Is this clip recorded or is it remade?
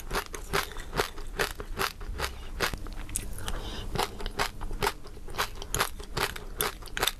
recorded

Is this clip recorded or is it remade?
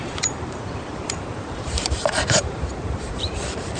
remade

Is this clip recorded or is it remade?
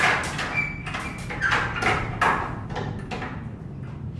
recorded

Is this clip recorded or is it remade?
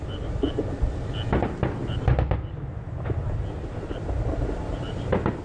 recorded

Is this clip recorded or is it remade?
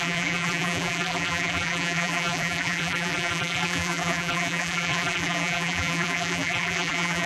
remade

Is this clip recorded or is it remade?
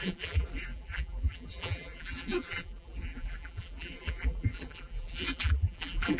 remade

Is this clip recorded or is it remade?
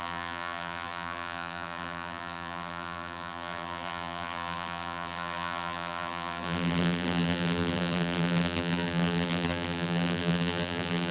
remade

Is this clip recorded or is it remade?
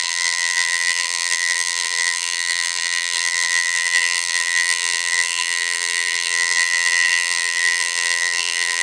remade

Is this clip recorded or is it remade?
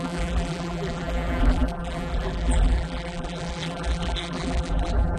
remade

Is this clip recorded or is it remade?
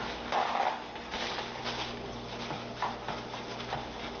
recorded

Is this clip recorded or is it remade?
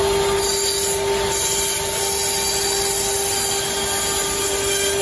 recorded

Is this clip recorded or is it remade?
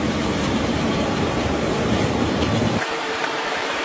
remade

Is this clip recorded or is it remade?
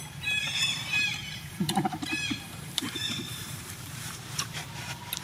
remade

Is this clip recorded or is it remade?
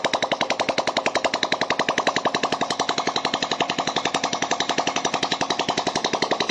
recorded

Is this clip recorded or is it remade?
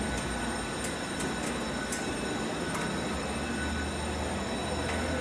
recorded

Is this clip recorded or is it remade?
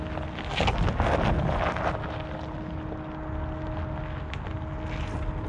recorded